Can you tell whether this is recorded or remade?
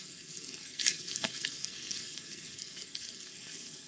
remade